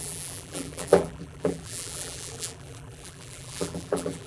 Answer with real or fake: fake